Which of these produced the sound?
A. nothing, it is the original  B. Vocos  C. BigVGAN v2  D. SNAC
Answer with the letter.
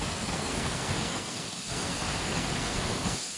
D